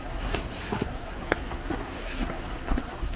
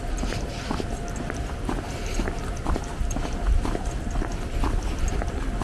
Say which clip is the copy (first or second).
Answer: first